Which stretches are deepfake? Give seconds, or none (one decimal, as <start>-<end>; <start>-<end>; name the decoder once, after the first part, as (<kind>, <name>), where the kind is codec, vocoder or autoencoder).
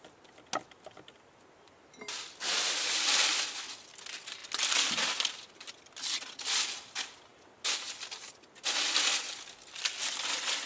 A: none